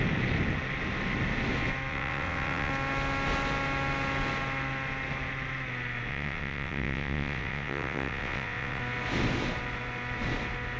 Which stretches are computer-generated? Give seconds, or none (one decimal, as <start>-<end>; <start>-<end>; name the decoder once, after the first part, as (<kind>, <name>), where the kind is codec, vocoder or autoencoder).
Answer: 1.9-2.7 (vocoder, WaveNeXt); 6.1-8.8